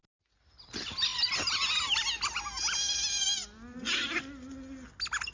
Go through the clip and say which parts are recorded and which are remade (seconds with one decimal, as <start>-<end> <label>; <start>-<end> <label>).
0.0-5.3 recorded